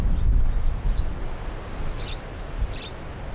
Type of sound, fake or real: real